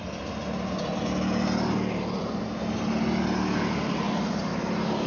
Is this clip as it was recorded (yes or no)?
yes